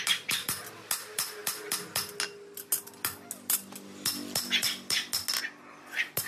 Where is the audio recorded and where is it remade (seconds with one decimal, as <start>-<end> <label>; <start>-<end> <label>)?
0.0-6.3 recorded